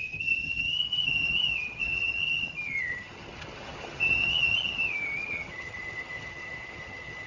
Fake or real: fake